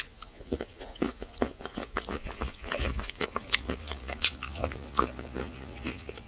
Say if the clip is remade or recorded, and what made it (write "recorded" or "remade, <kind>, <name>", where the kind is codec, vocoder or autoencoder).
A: remade, vocoder, Vocos